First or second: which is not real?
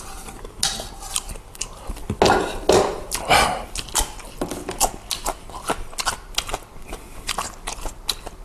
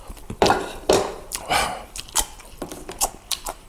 second